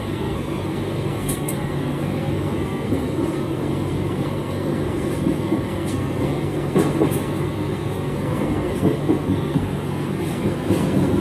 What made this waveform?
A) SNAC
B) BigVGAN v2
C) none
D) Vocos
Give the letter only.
A